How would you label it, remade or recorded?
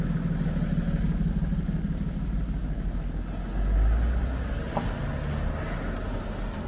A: recorded